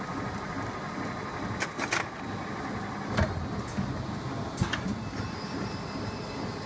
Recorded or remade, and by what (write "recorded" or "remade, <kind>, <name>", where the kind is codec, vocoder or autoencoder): recorded